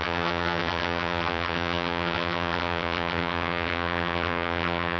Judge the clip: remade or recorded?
remade